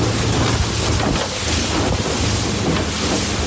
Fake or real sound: real